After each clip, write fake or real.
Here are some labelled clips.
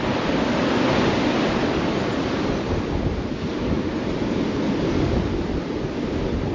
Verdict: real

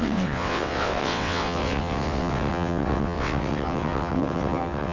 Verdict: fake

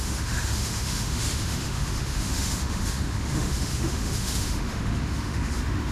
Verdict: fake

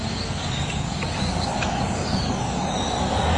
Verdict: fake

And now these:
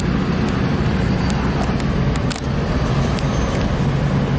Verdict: real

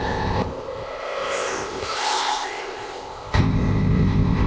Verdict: fake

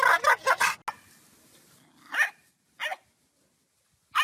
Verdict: real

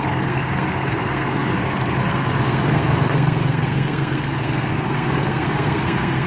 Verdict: fake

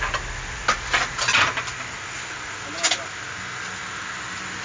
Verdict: real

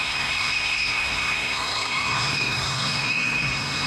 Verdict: fake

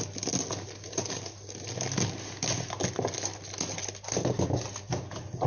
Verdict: real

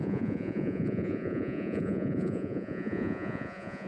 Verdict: fake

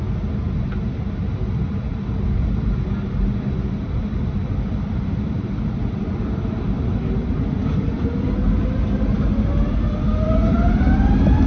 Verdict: real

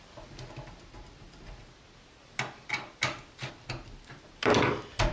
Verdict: real